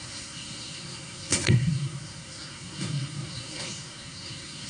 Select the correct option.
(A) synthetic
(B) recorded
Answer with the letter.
A